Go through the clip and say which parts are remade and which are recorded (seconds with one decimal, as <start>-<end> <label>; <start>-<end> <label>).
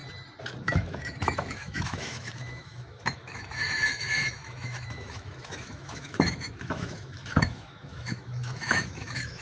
0.0-0.6 recorded; 0.6-9.4 remade